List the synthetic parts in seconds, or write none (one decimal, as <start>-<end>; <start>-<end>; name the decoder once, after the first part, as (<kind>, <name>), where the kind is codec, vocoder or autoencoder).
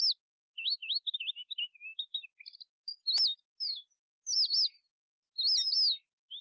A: none